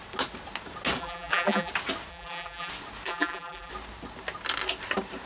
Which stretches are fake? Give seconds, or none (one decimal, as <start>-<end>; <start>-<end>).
1.0-1.7; 2.1-2.7; 3.1-3.7